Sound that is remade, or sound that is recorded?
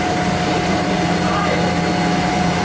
recorded